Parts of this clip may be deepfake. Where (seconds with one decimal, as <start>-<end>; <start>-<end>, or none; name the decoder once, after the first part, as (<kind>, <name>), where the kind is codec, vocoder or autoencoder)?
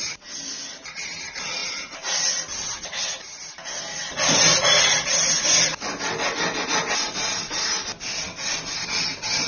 none